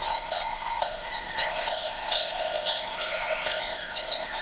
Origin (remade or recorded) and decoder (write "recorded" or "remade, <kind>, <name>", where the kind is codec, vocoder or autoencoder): remade, codec, ZipCodec